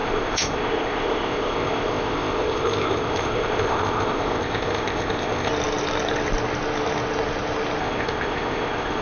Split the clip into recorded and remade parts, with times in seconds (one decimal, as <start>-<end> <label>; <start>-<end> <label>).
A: 0.0-5.5 remade; 5.5-7.8 recorded; 7.8-9.0 remade